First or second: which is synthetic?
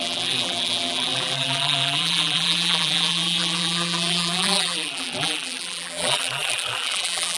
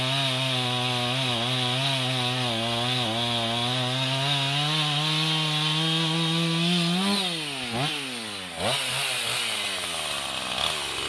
first